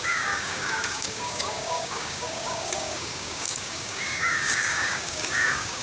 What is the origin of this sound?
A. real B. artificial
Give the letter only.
B